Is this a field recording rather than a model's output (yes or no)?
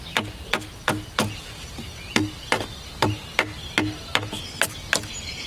yes